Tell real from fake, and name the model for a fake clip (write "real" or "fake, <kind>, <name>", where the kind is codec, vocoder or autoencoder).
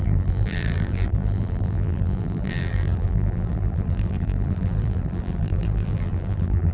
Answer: fake, vocoder, BigVGAN v2